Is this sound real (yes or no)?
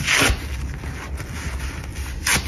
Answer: yes